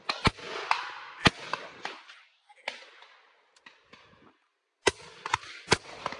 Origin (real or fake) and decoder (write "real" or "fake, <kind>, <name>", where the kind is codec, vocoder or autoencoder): real